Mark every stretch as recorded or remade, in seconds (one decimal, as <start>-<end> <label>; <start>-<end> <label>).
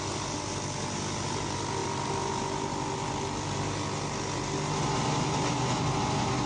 0.0-6.5 recorded